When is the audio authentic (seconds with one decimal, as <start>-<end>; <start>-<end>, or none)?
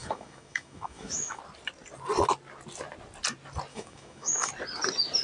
1.4-3.7; 4.5-5.2